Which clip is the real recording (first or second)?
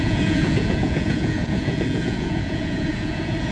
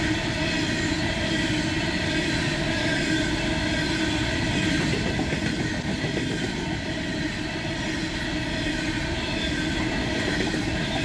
second